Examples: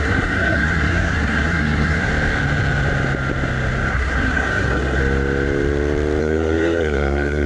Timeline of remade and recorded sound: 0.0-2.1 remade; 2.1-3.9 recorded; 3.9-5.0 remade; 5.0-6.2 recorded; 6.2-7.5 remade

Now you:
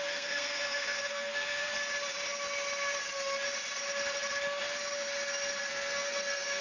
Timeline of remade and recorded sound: 0.0-1.7 remade; 1.7-5.7 recorded; 5.7-6.6 remade

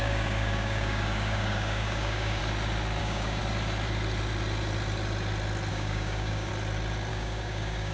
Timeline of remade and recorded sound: 0.0-2.4 remade; 2.4-3.0 recorded; 3.0-3.4 remade; 3.4-5.7 recorded; 5.7-6.5 remade; 6.5-7.1 recorded; 7.1-7.9 remade

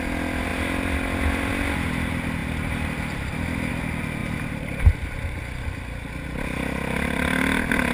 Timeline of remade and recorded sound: 0.0-4.2 recorded; 4.2-4.8 remade; 4.8-7.9 recorded

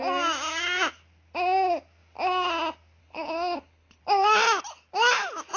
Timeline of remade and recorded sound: 0.0-3.0 recorded; 3.0-4.0 remade; 4.0-5.6 recorded

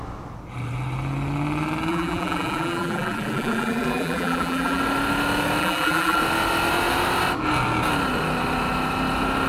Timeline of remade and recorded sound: 0.0-1.9 recorded; 1.9-4.8 remade; 4.8-5.6 recorded; 5.6-6.2 remade; 6.2-9.5 recorded

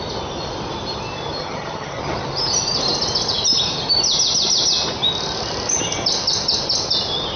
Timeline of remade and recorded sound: 0.0-1.4 recorded; 1.4-2.1 remade; 2.1-7.4 recorded

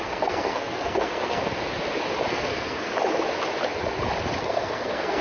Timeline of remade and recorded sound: 0.0-1.4 remade; 1.4-2.3 recorded; 2.3-2.9 remade; 2.9-4.4 recorded; 4.4-5.2 remade